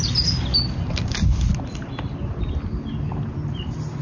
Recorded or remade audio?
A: recorded